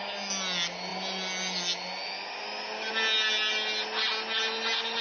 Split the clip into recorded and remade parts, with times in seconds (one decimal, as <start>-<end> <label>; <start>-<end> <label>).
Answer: 0.0-5.0 recorded